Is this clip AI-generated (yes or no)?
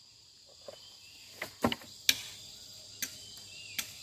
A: no